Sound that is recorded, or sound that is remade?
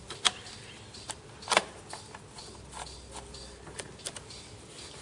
recorded